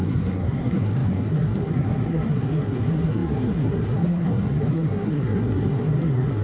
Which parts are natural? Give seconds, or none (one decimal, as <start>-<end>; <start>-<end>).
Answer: none